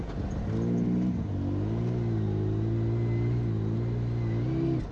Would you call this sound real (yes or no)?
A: yes